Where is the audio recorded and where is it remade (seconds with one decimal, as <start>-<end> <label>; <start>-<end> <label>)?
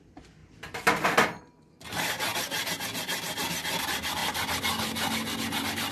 0.0-5.9 recorded